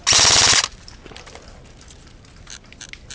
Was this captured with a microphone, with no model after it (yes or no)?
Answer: yes